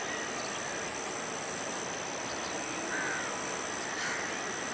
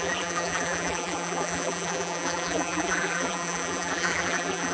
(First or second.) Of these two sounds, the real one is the first